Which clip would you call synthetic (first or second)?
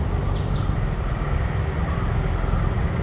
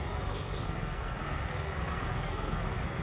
second